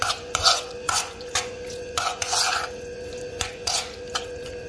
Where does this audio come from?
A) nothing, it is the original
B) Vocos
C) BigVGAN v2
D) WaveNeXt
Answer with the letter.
B